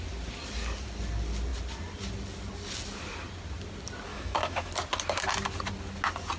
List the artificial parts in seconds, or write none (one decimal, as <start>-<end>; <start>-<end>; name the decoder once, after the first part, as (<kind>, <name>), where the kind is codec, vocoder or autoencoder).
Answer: 4.1-4.7 (autoencoder, DAC-VAE)